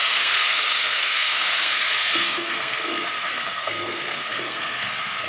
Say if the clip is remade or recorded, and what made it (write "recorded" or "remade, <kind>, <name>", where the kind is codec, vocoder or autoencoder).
remade, codec, SNAC